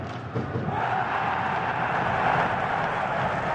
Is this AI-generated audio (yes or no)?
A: no